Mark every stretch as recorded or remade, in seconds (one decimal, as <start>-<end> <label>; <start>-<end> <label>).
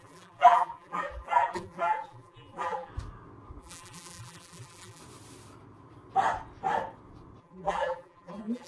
0.0-2.9 remade; 2.9-3.6 recorded; 3.6-5.0 remade; 5.0-7.4 recorded; 7.4-8.7 remade